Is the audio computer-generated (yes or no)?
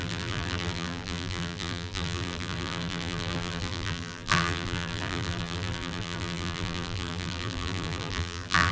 yes